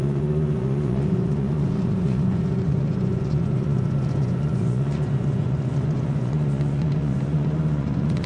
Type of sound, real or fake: fake